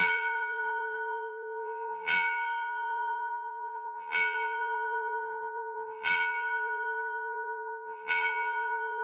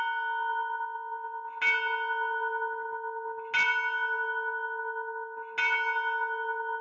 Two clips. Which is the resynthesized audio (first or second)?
first